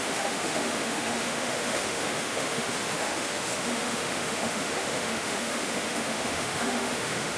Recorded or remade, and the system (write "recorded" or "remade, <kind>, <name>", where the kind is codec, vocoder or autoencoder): remade, autoencoder, DAC-VAE